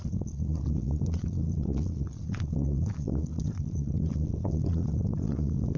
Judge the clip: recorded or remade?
remade